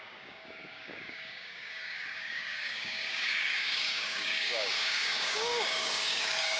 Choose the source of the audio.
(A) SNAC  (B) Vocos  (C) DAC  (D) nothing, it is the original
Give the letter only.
C